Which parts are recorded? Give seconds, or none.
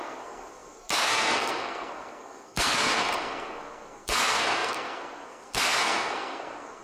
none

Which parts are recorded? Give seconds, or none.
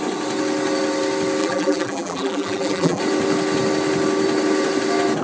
0.0-1.4; 3.0-5.2